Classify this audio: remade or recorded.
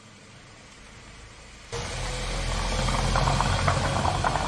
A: recorded